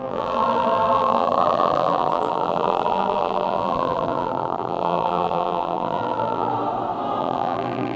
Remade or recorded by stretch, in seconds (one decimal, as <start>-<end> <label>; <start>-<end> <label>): 0.0-6.5 remade; 6.5-7.2 recorded; 7.2-8.0 remade